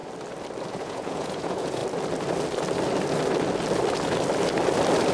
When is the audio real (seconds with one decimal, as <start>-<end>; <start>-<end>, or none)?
0.0-0.7; 1.8-5.1